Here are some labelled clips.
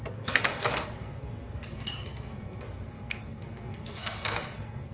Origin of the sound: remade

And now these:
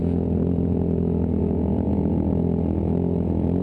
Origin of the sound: recorded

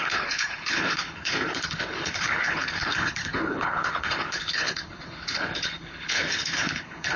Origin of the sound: remade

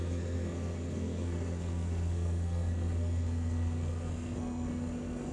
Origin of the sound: remade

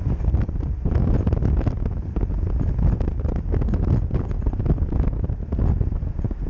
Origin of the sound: recorded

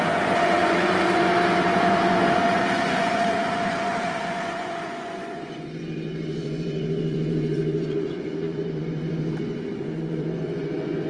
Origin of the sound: remade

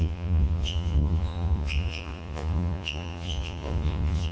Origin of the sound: remade